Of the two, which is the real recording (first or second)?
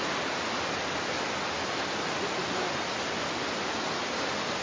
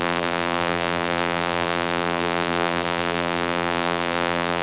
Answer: first